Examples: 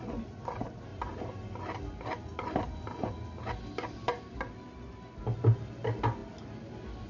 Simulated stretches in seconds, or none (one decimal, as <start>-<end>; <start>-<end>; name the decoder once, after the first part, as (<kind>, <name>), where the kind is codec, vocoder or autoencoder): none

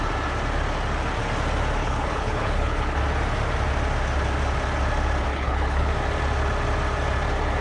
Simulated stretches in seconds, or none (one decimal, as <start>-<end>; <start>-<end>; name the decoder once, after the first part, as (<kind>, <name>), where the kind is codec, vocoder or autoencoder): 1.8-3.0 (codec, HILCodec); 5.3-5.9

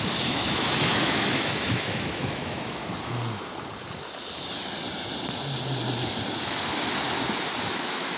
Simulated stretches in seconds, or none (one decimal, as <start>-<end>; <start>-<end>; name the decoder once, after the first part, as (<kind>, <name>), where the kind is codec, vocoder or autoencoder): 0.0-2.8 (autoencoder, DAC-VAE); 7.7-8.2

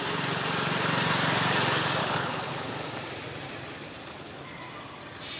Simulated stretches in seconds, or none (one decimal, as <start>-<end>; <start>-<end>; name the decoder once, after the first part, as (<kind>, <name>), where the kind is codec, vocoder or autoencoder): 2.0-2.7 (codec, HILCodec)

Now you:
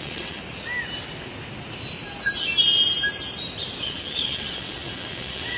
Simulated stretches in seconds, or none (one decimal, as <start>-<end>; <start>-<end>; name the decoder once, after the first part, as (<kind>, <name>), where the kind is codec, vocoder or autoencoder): 0.0-0.4 (vocoder, WaveNeXt); 3.8-5.6

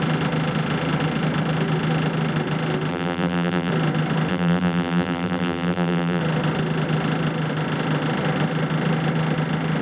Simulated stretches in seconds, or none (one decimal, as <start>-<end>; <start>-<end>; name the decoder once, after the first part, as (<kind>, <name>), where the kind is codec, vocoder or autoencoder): 2.9-3.7 (vocoder, BigVGAN v2); 4.3-6.2

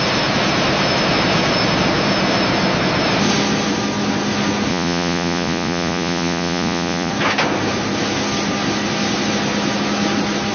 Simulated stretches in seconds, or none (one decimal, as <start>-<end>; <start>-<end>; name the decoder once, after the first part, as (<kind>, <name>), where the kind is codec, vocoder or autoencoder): 4.7-7.1 (vocoder, Vocos)